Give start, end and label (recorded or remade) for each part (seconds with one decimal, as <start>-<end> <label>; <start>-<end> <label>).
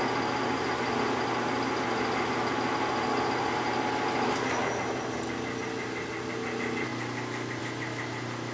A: 0.0-8.5 recorded